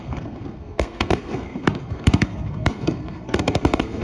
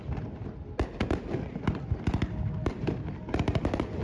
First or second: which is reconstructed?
first